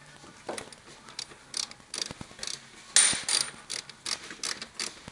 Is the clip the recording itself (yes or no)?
yes